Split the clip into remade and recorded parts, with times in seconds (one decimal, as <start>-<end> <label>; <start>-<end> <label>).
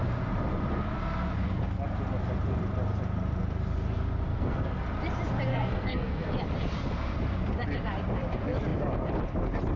0.0-4.3 recorded; 4.3-4.8 remade; 4.8-5.5 recorded; 5.5-6.3 remade; 6.3-9.8 recorded